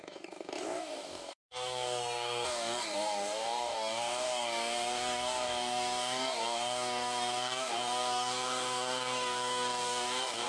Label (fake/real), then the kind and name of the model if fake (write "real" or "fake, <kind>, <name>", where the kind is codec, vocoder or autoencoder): fake, codec, DAC